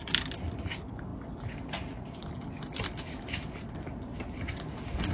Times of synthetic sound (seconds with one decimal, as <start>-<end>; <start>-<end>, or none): none